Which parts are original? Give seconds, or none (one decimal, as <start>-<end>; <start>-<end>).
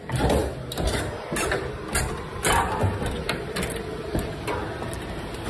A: 0.0-5.5